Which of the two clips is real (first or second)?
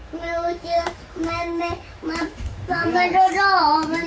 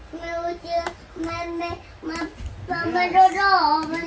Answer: second